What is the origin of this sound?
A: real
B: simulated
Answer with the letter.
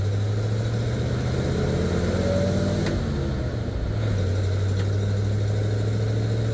A